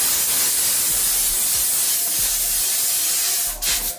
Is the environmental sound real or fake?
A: real